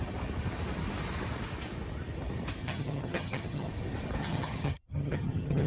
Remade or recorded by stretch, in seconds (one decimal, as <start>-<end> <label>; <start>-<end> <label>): 0.0-2.6 recorded; 2.6-3.7 remade; 3.7-4.2 recorded; 4.2-5.7 remade